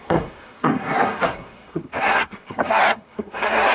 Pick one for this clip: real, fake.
fake